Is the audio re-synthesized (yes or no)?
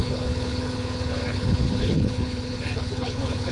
yes